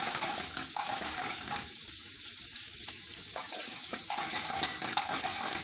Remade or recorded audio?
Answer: remade